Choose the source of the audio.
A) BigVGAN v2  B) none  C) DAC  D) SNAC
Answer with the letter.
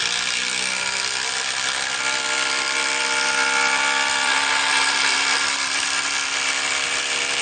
A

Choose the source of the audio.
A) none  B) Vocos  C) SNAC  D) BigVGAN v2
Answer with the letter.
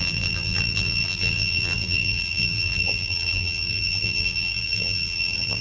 D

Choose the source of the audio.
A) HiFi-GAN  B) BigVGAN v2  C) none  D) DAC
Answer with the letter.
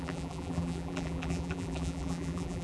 B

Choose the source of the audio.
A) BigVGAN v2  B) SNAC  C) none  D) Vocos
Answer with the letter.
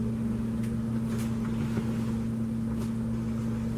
C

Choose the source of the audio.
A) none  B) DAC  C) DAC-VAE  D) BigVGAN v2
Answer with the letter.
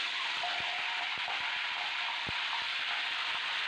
A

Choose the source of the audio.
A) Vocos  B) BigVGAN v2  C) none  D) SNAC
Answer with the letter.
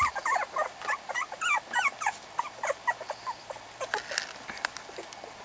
C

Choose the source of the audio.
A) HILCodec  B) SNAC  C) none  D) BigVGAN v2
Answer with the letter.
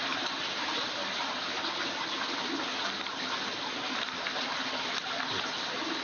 C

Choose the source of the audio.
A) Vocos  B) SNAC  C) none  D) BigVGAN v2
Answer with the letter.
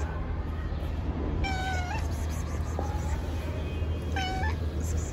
C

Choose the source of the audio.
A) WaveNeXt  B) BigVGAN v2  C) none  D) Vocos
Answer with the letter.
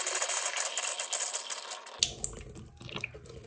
C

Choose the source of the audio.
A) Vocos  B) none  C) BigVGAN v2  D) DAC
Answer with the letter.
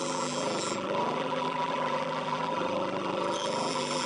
C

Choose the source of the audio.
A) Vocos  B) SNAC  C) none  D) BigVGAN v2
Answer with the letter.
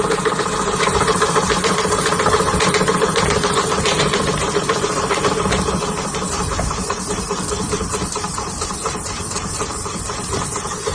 D